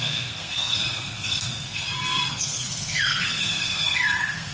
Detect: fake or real fake